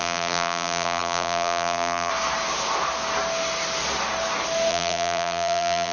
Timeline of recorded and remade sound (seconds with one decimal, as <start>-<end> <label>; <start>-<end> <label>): 0.0-2.1 remade; 2.1-4.7 recorded; 4.7-5.9 remade